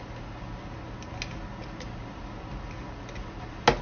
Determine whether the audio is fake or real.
real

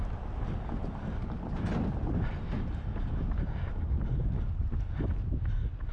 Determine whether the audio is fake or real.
real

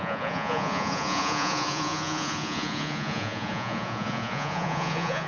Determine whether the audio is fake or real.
fake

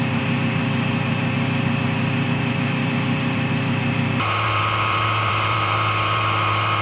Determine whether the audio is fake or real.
fake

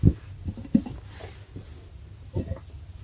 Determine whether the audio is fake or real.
real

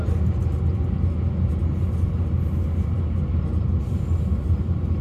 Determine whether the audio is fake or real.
real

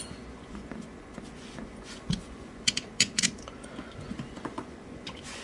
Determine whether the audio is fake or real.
fake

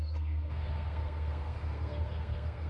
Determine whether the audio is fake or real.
fake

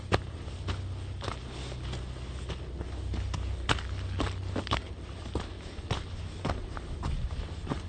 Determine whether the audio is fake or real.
real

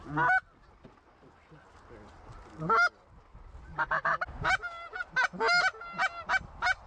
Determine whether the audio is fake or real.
real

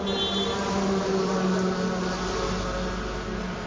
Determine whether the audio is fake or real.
real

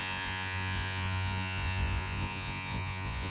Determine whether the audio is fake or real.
fake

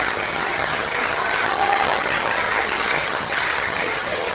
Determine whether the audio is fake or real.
fake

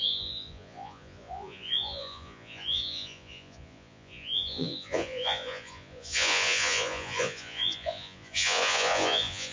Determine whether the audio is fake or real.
fake